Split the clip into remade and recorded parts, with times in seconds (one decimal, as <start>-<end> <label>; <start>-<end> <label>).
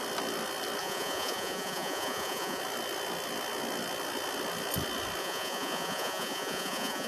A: 0.0-0.8 recorded; 0.8-2.6 remade; 2.6-5.2 recorded; 5.2-7.1 remade